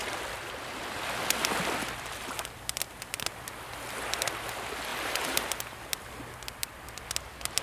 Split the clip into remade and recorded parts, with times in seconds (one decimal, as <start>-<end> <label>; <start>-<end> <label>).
0.0-7.6 recorded